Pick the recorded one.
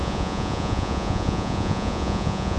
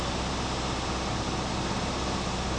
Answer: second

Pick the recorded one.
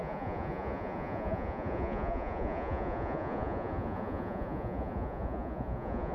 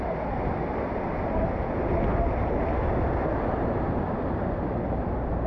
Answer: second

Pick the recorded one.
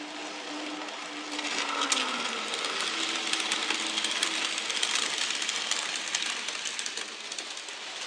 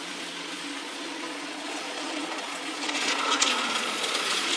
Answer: first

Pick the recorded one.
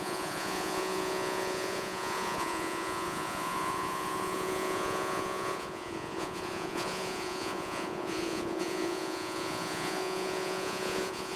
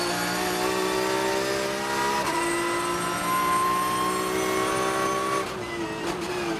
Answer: second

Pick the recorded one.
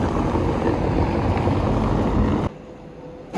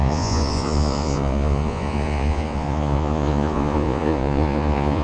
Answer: first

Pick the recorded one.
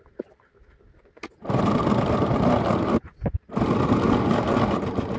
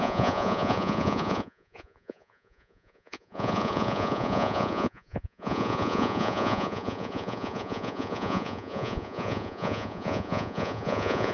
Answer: first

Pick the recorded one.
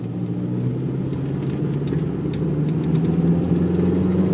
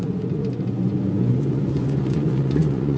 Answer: first